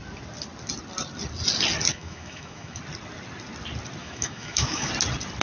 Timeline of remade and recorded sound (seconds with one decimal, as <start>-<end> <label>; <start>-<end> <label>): 0.0-1.9 recorded; 1.9-2.8 remade; 2.8-4.0 recorded; 4.0-4.9 remade; 4.9-5.4 recorded

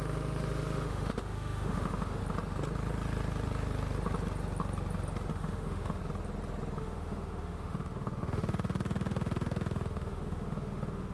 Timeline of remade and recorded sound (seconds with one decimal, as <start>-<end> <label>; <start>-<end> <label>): 0.0-2.2 remade; 2.2-5.3 recorded; 5.3-6.0 remade; 6.0-6.8 recorded; 6.8-11.1 remade

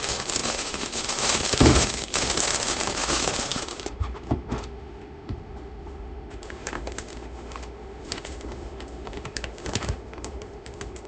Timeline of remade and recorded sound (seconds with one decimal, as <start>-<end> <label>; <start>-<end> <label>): 0.0-11.1 remade

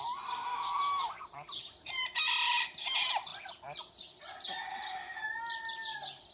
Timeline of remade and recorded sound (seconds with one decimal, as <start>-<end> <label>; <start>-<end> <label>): 0.0-0.5 recorded; 0.5-1.2 remade; 1.2-6.3 recorded

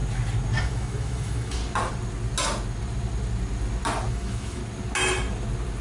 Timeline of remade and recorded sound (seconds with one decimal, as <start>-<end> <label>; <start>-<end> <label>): 0.0-0.6 recorded; 0.6-1.6 remade; 1.6-4.1 recorded; 4.1-4.6 remade; 4.6-5.8 recorded

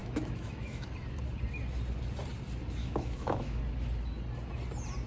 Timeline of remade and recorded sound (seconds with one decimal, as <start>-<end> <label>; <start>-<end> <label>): 0.0-0.9 remade; 0.9-2.8 recorded; 2.8-3.6 remade; 3.6-5.1 recorded

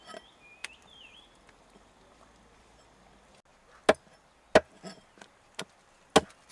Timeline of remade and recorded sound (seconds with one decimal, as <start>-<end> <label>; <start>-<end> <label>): 0.0-6.5 recorded